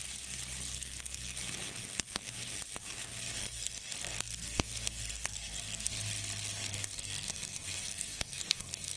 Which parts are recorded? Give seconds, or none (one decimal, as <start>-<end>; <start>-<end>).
0.0-0.7; 1.4-1.8; 2.3-3.4; 5.9-6.7

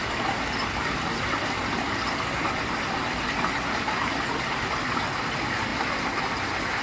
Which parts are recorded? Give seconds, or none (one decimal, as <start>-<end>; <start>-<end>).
0.0-6.8

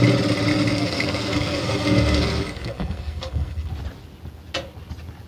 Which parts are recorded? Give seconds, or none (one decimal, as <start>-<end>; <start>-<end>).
0.0-0.5; 3.7-5.3

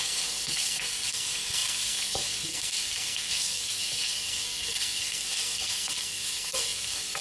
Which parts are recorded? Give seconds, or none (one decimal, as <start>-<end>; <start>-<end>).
none

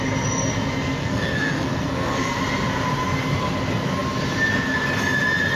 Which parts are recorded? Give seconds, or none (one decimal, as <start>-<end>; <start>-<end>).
0.0-1.0; 2.4-5.6

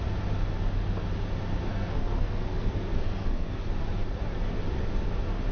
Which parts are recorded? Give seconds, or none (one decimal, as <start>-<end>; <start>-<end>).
0.0-1.7; 3.6-5.5